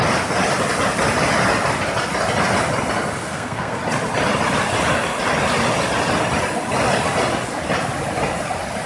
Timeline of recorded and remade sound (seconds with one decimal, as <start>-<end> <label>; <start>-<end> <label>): 0.0-3.2 recorded; 3.2-3.8 remade; 3.8-8.9 recorded